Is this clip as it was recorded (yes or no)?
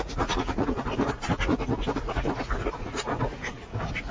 no